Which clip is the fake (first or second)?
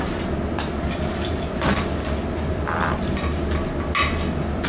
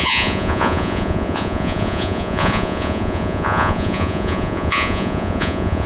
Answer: second